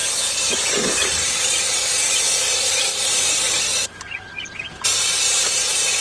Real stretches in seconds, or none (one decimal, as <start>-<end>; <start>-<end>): 0.0-6.0